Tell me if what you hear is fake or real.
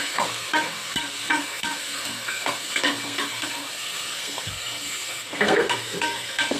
fake